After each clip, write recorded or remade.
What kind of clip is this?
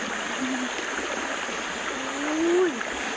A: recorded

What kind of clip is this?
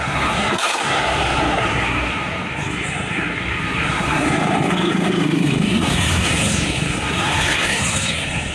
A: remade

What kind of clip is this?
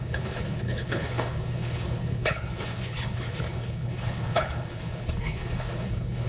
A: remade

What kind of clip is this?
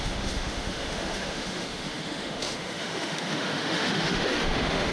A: remade